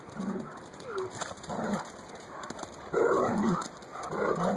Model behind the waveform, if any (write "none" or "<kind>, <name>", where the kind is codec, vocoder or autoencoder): none